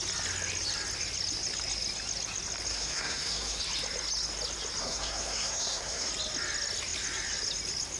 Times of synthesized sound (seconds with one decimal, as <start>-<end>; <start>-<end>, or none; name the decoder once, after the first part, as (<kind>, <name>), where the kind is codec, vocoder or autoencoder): 2.7-3.6 (codec, SNAC); 4.8-6.1